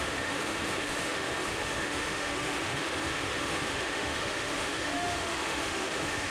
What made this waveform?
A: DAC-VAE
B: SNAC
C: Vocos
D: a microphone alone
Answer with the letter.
A